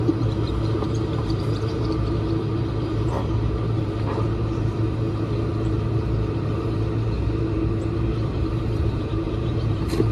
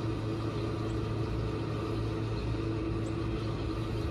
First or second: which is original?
second